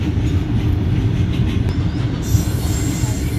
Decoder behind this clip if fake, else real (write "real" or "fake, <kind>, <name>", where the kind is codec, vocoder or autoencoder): real